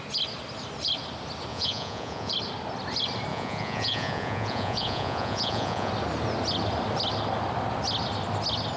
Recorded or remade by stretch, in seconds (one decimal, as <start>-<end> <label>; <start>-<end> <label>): 0.0-1.5 recorded; 1.5-2.3 remade; 2.3-3.3 recorded; 3.3-5.9 remade; 5.9-8.8 recorded